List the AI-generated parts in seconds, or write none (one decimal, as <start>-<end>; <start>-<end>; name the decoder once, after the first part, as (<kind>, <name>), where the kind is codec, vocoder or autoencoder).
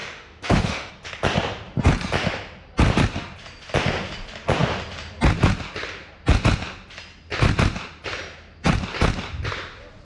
0.0-0.9 (autoencoder, DAC-VAE)